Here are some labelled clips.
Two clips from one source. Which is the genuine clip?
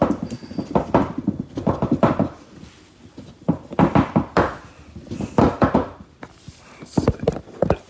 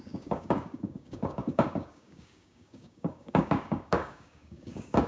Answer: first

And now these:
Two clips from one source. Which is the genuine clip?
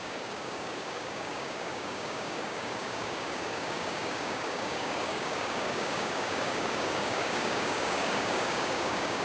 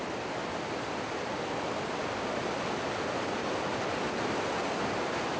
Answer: second